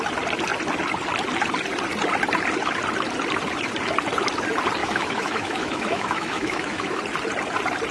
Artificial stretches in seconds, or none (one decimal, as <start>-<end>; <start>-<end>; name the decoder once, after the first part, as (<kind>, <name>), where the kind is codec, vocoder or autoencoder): 4.8-7.0 (autoencoder, DAC-VAE)